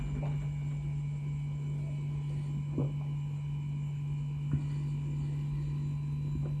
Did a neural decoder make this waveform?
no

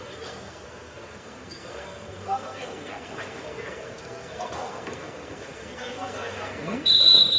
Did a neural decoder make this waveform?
yes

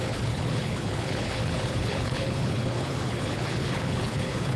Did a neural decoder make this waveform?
yes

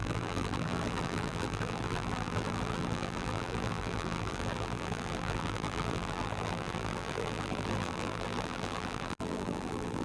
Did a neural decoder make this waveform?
yes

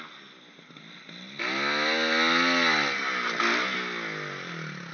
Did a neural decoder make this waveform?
no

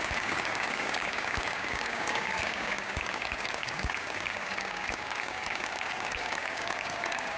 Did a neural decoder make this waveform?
yes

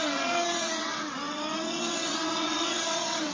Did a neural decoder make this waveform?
yes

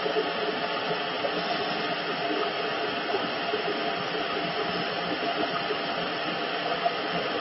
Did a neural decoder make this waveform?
no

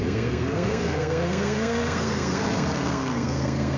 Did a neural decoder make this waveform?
yes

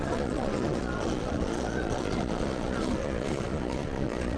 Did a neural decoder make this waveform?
yes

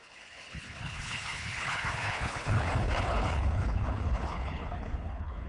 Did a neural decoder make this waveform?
yes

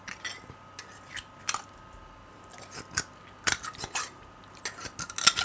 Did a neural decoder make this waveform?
no